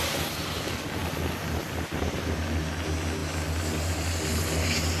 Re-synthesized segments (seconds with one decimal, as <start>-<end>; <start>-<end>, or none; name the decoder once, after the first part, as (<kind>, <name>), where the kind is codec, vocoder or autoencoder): 1.0-2.7 (vocoder, BigVGAN v2)

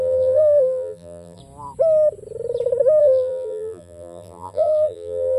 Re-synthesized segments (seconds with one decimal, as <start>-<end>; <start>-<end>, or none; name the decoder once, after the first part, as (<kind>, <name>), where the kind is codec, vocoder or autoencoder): 0.0-1.4 (vocoder, BigVGAN v2); 3.0-5.4

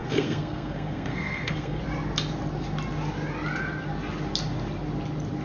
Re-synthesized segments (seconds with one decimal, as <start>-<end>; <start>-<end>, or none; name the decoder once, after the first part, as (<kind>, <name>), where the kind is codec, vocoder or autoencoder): 0.0-1.8 (codec, SNAC)